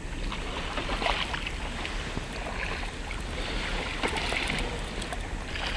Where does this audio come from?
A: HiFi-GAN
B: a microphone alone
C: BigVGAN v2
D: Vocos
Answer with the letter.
B